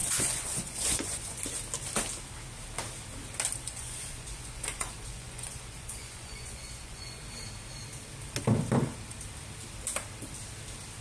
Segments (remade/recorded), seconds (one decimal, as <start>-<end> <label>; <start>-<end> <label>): 0.0-1.4 remade; 1.4-3.6 recorded; 3.6-7.2 remade; 7.2-11.0 recorded

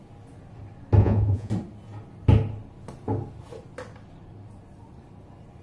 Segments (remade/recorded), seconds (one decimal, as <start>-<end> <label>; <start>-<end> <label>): 0.0-1.0 recorded; 1.0-1.5 remade; 1.5-5.6 recorded

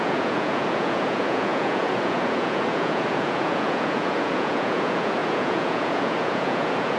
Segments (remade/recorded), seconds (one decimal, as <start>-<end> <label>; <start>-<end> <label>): 0.0-7.0 remade

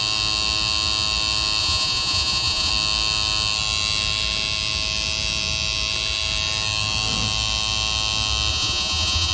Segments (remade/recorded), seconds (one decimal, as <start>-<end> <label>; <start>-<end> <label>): 0.0-1.6 recorded; 1.6-2.7 remade; 2.7-8.5 recorded; 8.5-9.3 remade

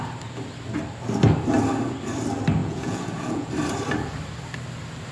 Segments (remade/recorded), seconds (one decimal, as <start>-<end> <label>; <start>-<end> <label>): 0.0-2.6 recorded; 2.6-3.5 remade; 3.5-5.1 recorded

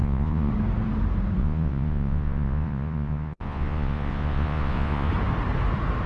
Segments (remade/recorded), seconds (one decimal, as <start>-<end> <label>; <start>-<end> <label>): 0.0-0.5 remade; 0.5-1.4 recorded; 1.4-5.1 remade; 5.1-6.1 recorded